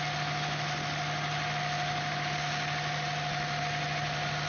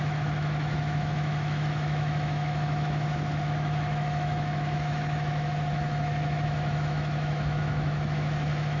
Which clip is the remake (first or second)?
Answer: second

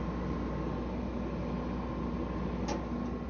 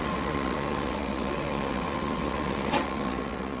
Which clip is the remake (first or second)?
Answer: second